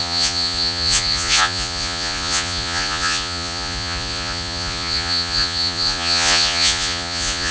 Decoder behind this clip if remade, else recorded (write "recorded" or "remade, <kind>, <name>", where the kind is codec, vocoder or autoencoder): remade, vocoder, Vocos